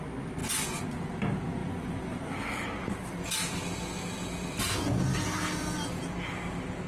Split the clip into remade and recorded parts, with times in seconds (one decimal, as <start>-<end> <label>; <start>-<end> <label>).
0.0-6.9 recorded